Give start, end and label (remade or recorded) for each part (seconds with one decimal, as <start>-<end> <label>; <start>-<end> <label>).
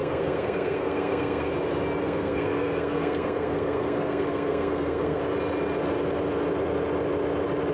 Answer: 0.0-1.5 remade; 1.5-2.0 recorded; 2.0-5.2 remade; 5.2-7.7 recorded